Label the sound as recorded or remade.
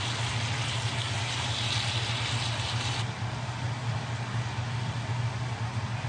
recorded